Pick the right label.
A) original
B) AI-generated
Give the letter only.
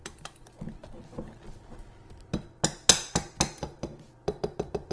A